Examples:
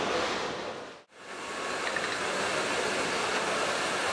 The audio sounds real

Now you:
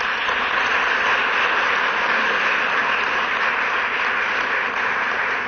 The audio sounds real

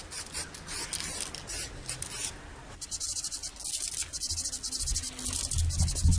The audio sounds real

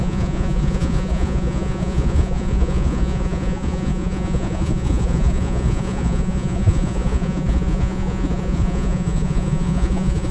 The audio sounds fake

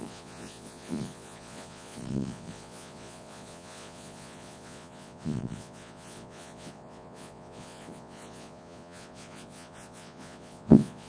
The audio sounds fake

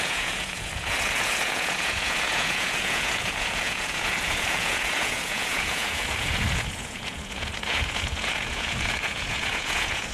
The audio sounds fake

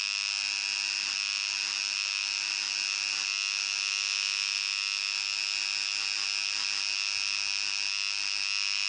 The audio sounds real